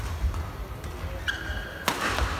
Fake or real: real